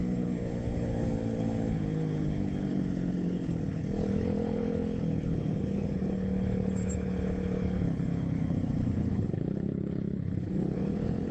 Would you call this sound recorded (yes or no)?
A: no